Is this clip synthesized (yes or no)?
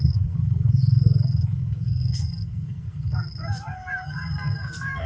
yes